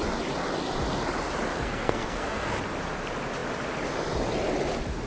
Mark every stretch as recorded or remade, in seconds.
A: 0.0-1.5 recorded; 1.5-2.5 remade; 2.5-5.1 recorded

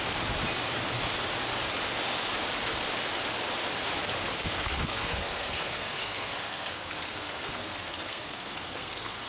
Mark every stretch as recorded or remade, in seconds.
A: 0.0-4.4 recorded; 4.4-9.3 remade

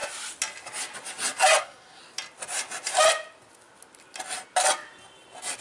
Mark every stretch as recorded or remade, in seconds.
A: 0.0-1.6 recorded; 1.6-2.0 remade; 2.0-5.6 recorded